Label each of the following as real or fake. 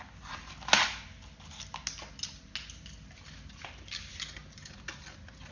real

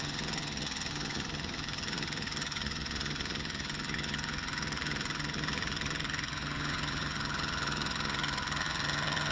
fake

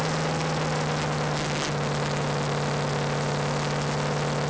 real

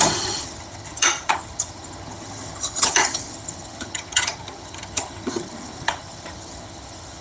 fake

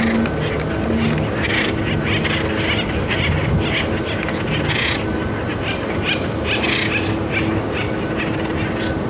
real